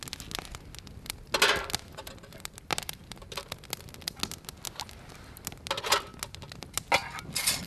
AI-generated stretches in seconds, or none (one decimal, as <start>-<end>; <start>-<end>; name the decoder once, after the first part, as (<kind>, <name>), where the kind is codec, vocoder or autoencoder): none